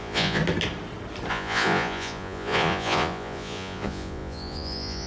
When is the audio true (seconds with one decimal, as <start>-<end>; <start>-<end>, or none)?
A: 0.4-1.3